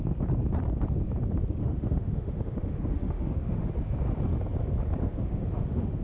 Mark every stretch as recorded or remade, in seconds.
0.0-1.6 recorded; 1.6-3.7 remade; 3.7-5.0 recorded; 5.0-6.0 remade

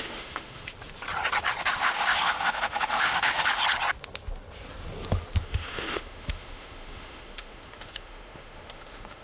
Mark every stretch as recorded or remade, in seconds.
0.0-0.7 remade; 0.7-1.6 recorded; 1.6-3.6 remade; 3.6-5.4 recorded; 5.4-9.2 remade

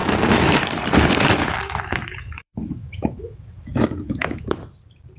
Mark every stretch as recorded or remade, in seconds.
0.0-0.6 remade; 0.6-1.4 recorded; 1.4-4.5 remade; 4.5-5.2 recorded